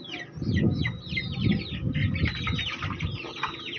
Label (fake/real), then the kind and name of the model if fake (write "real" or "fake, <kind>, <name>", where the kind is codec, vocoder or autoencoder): real